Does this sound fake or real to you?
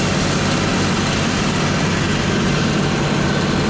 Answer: real